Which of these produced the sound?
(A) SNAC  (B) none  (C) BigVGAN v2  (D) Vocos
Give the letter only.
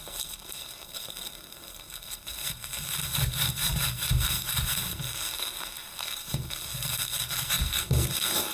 A